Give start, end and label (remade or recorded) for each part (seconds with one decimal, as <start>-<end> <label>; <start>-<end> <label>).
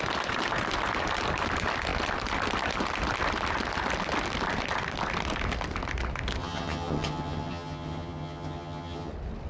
0.0-6.4 recorded; 6.4-9.1 remade; 9.1-9.5 recorded